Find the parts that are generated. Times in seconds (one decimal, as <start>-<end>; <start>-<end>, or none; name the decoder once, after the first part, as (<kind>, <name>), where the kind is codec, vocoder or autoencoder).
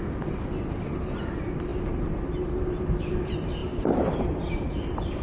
3.6-4.4 (vocoder, BigVGAN v2)